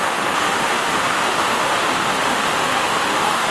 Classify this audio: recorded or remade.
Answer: remade